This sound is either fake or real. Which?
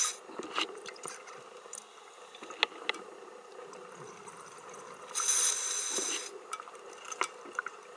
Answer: real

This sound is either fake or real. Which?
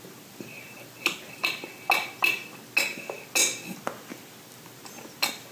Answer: real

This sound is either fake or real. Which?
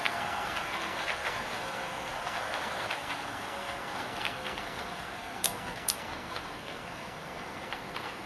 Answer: fake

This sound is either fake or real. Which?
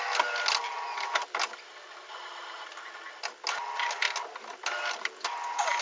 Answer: real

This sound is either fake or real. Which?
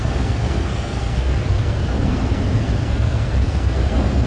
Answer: fake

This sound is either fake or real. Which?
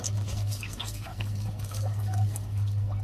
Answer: fake